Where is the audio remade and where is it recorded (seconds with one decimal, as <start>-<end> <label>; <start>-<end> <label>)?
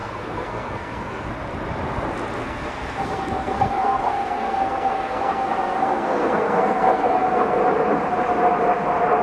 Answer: 0.0-1.3 remade; 1.3-2.4 recorded; 2.4-7.6 remade; 7.6-9.2 recorded